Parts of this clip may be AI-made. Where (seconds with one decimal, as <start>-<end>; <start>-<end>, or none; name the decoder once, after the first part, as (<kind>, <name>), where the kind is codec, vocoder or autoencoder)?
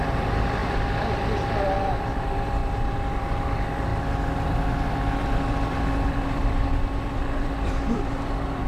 0.0-0.6 (vocoder, BigVGAN v2); 1.6-3.9; 5.2-8.7